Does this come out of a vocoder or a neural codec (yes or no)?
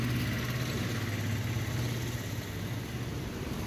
no